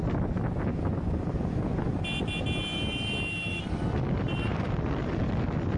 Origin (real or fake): real